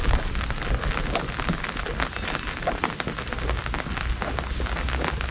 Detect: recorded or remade recorded